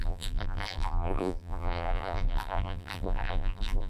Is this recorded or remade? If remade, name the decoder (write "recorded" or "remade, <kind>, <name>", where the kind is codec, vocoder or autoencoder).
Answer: remade, vocoder, BigVGAN v2